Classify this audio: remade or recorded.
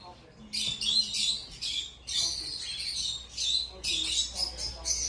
recorded